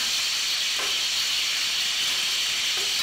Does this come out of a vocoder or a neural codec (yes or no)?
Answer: no